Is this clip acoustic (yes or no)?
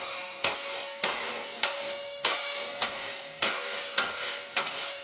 no